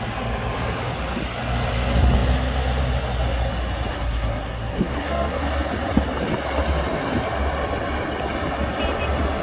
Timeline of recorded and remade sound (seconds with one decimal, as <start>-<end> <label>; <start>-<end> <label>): 0.0-3.9 recorded; 3.9-5.4 remade; 5.4-9.4 recorded